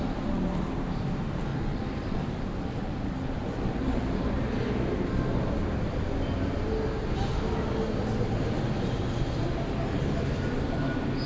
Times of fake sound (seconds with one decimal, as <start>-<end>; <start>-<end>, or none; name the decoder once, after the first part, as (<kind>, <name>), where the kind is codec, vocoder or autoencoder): 1.5-4.3 (vocoder, BigVGAN v2)